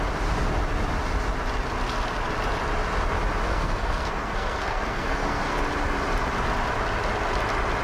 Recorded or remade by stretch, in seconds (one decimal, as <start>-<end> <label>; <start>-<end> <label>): 0.0-3.5 recorded; 3.5-5.6 remade; 5.6-7.8 recorded